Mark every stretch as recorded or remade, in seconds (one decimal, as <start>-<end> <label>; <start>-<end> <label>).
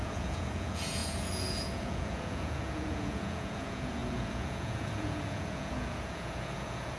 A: 0.0-7.0 remade